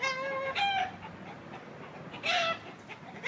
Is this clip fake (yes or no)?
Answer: no